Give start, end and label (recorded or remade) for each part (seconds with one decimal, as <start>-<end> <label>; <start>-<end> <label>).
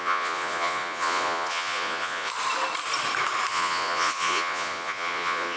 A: 0.0-2.3 remade; 2.3-3.5 recorded; 3.5-5.6 remade